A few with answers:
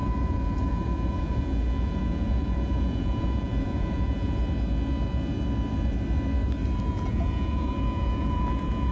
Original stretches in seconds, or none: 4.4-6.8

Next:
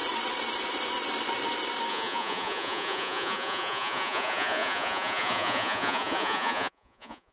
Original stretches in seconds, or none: 0.0-1.9